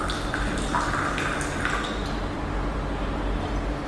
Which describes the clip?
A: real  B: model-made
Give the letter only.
A